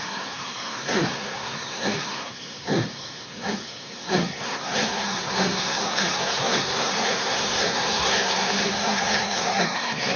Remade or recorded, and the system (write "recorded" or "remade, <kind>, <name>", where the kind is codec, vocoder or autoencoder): remade, codec, SNAC